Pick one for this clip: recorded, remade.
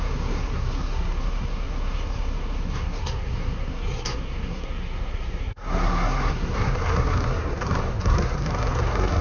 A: remade